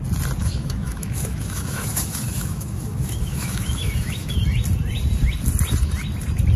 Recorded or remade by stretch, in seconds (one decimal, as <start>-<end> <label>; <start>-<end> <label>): 0.0-0.4 recorded; 0.4-4.4 remade; 4.4-6.6 recorded